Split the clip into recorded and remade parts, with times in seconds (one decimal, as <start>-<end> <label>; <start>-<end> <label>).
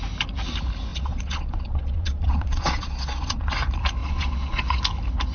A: 0.0-0.9 recorded; 0.9-3.5 remade; 3.5-4.0 recorded; 4.0-4.8 remade; 4.8-5.3 recorded